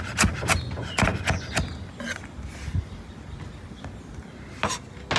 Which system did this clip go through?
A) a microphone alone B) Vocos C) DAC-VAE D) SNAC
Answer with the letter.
A